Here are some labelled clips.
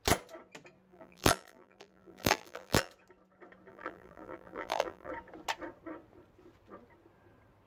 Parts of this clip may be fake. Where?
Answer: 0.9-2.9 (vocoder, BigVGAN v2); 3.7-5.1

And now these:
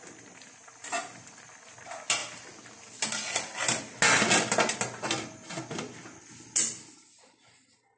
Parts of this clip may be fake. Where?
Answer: none

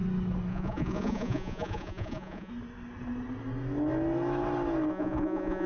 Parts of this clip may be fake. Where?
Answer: 0.5-2.5 (vocoder, Vocos); 4.9-5.7

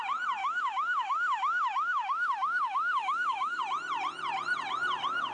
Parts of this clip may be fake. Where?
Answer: 0.4-3.6 (autoencoder, DAC-VAE)

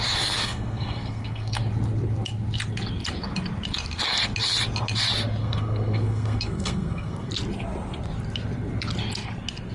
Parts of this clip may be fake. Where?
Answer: 0.4-1.6 (codec, SNAC); 5.4-7.3

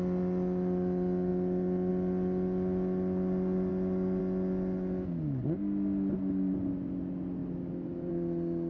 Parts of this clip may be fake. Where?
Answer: none